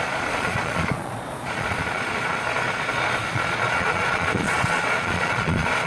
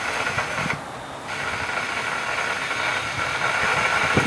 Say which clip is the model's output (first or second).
first